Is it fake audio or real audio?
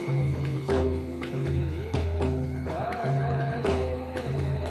fake